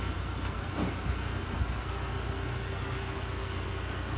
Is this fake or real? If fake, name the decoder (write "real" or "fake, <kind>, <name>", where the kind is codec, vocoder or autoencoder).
fake, codec, SNAC